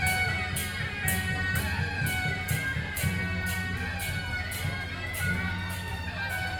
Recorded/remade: recorded